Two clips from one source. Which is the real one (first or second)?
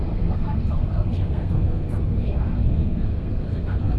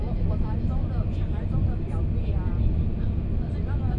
second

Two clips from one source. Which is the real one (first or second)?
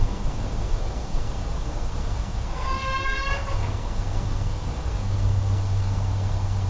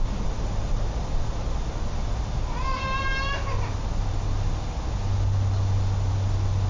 second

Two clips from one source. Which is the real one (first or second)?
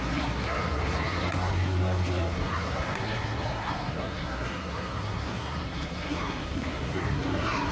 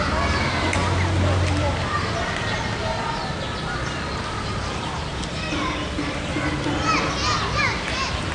second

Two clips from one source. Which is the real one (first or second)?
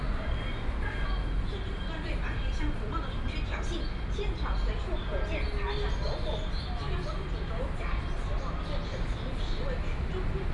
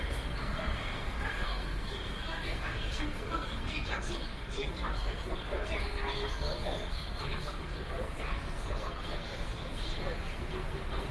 first